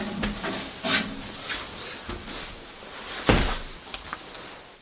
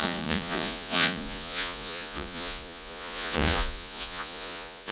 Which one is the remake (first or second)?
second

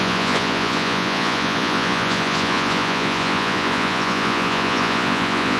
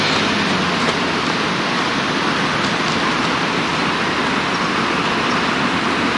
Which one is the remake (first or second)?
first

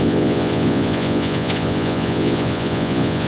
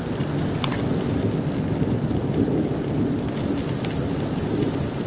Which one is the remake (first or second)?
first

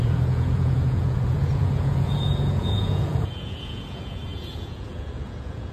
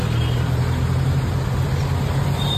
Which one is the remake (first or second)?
first